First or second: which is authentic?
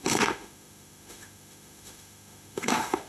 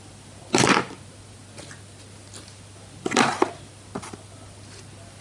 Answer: second